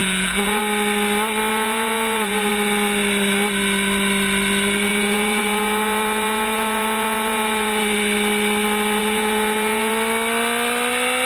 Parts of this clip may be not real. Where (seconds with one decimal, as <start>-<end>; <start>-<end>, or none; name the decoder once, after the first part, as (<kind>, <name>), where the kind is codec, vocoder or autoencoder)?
0.0-0.6 (vocoder, Vocos); 1.5-2.5; 4.9-7.8; 9.0-9.9